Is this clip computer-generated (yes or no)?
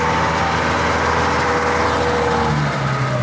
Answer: no